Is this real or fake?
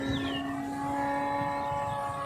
real